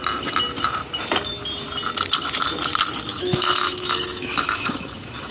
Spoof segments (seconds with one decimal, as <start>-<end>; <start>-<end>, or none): 3.1-5.3